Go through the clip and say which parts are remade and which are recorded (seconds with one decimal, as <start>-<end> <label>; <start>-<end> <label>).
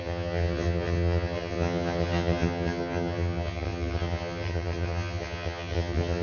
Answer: 0.0-6.2 remade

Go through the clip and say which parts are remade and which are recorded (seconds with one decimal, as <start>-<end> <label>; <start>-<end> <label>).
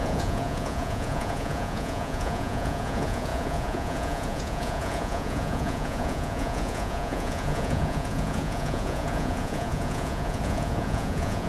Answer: 0.0-11.5 remade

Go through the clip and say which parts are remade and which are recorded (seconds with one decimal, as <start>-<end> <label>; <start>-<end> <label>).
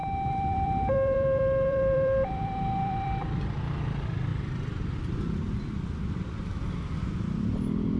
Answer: 0.0-3.4 remade; 3.4-4.3 recorded; 4.3-6.1 remade; 6.1-8.0 recorded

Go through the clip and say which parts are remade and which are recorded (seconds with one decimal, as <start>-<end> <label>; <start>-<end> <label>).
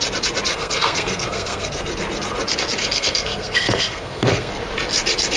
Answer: 0.0-0.5 recorded; 0.5-1.9 remade; 1.9-2.8 recorded; 2.8-4.5 remade; 4.5-5.4 recorded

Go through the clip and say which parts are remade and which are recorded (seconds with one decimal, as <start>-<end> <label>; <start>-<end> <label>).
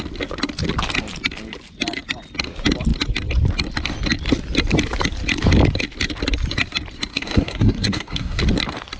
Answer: 0.0-7.1 recorded; 7.1-8.4 remade; 8.4-9.0 recorded